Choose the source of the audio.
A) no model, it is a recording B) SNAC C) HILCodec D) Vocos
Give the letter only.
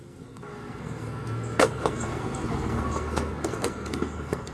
B